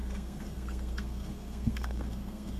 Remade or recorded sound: remade